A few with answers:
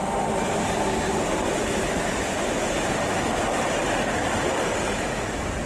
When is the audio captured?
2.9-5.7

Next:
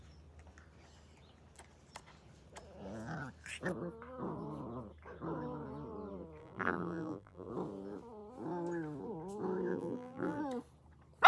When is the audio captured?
0.0-6.4; 7.5-9.7; 10.4-11.3

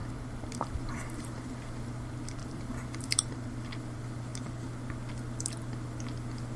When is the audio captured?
1.9-2.4; 3.3-6.6